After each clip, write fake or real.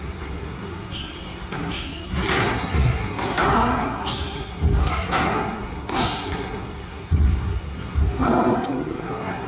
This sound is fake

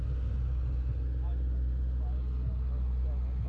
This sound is real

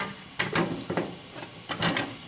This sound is real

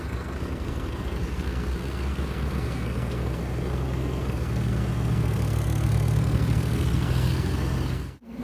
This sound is fake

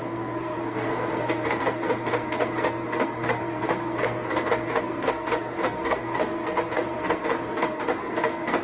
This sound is fake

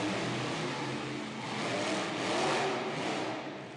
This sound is real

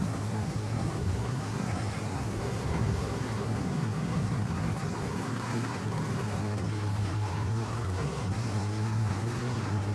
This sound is fake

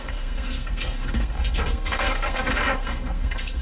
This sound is fake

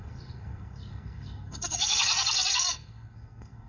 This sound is fake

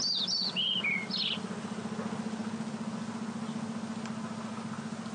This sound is real